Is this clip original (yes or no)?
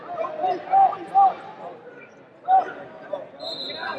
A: yes